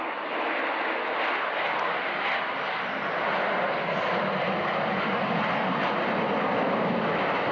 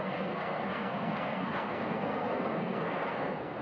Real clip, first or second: first